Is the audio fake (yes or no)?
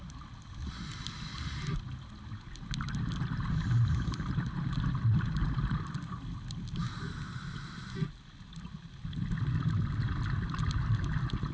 no